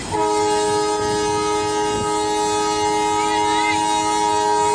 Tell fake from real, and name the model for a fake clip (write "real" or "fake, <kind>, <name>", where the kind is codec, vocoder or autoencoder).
real